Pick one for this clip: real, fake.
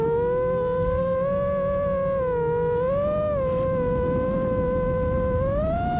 real